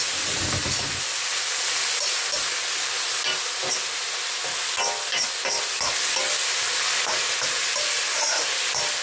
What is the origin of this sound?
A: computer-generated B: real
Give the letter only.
B